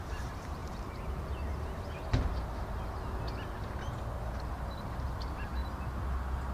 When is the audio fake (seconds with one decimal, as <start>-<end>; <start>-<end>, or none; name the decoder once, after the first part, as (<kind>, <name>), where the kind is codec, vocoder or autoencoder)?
0.0-0.6 (vocoder, BigVGAN v2); 4.5-5.6